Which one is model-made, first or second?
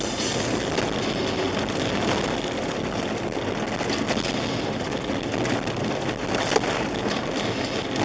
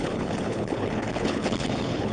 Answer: second